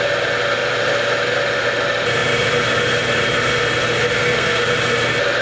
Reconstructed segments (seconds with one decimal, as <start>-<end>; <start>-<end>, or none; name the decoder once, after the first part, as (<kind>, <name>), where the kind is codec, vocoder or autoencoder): 4.1-4.6 (codec, SNAC)